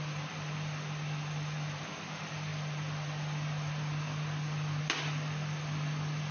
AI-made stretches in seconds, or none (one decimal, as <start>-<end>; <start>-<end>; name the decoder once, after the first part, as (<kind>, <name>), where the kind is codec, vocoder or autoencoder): none